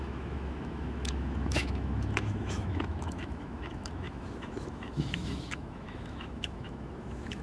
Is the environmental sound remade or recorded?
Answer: remade